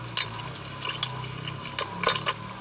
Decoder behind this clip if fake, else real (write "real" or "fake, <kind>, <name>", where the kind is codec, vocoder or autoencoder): real